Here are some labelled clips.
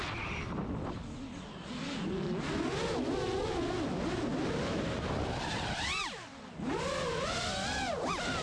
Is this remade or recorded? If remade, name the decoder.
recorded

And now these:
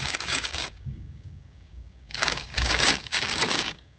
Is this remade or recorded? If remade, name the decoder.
remade, codec, DAC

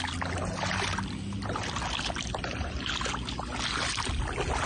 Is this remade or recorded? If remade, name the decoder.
recorded